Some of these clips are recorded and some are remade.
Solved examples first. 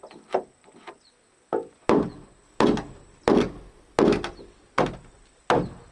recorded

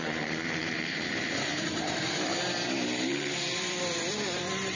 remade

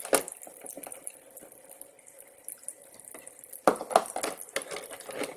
recorded